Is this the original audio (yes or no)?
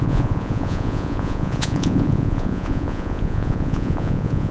no